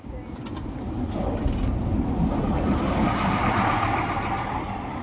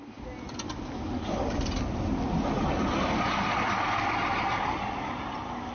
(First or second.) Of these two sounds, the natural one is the second